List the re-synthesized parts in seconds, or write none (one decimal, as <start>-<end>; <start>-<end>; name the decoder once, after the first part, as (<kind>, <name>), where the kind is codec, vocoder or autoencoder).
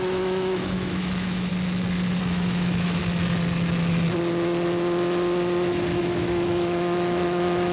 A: 0.0-1.5 (autoencoder, DAC-VAE); 2.2-3.0; 6.0-7.7